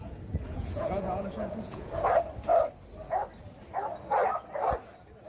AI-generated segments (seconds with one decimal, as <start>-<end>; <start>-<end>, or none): 0.0-1.9

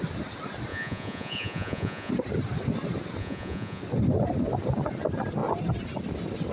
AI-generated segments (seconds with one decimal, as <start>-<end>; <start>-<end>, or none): 0.7-2.1; 3.2-3.8

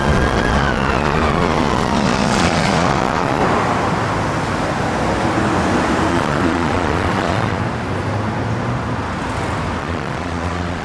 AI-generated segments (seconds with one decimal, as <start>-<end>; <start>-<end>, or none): 0.0-3.4; 6.1-7.6; 9.8-10.8